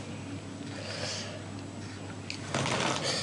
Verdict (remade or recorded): recorded